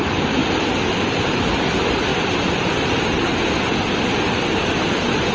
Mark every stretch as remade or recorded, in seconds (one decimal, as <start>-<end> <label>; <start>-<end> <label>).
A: 0.0-5.3 recorded